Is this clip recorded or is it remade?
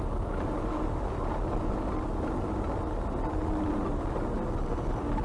recorded